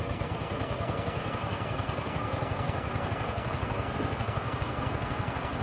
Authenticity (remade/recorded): remade